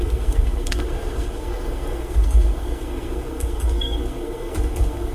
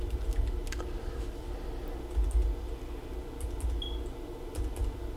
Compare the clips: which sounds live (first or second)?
second